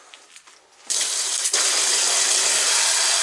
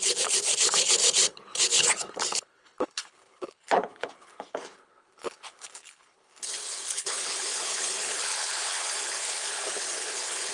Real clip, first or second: first